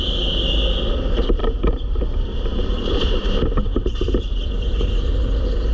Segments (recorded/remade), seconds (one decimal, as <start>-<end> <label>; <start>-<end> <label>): 0.0-1.4 recorded; 1.4-3.3 remade; 3.3-5.7 recorded